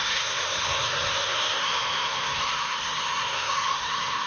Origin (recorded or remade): remade